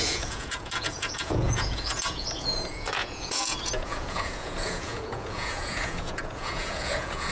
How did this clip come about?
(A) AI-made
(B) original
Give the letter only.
A